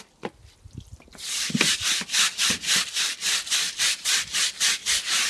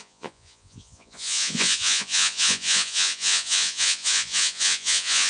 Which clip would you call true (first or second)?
first